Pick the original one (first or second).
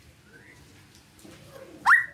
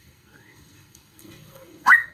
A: first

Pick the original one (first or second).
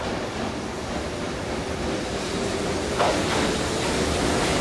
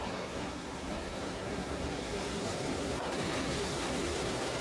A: first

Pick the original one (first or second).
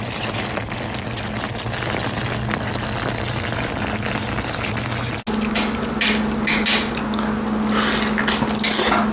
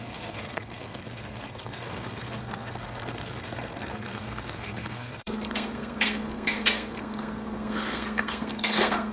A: first